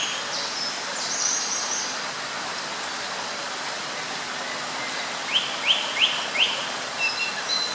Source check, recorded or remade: recorded